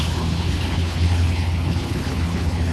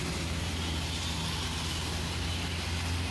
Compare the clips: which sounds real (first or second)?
second